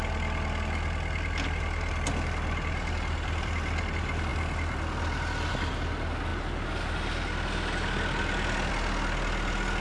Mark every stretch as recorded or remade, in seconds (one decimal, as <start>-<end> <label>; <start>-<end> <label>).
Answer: 0.0-9.8 recorded